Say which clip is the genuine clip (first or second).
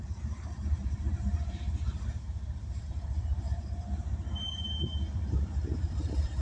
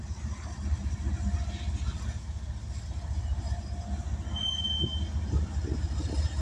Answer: second